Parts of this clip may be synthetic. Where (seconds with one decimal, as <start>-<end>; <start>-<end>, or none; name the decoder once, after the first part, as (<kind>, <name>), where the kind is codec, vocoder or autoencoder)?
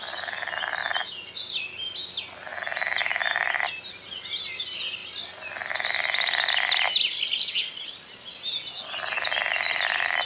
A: none